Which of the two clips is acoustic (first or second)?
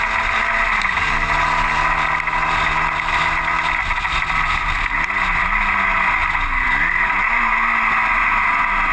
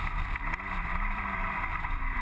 first